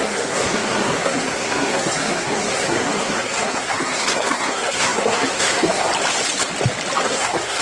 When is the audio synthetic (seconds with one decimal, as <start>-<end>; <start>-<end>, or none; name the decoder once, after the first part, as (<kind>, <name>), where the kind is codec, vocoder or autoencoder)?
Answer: 0.0-5.9 (codec, SNAC); 7.0-7.6